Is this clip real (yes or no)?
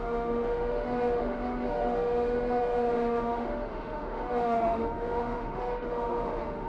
no